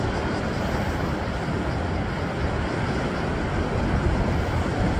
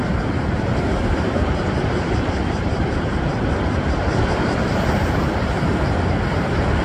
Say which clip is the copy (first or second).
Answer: second